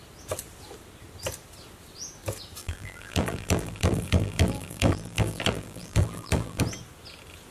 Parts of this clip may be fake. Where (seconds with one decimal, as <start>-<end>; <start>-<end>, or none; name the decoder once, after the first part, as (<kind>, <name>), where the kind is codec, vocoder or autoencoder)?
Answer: 2.6-6.6 (vocoder, BigVGAN v2)